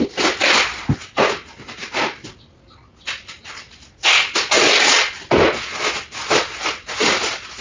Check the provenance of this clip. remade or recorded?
recorded